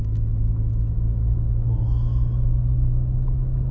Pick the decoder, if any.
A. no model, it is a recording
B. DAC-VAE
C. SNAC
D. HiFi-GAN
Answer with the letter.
B